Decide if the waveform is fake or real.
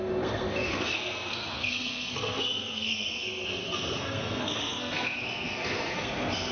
fake